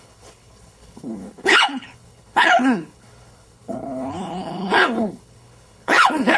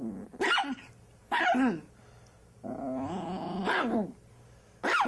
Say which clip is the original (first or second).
second